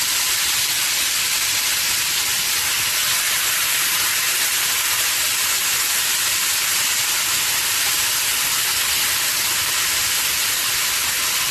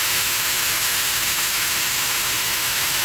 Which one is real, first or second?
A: first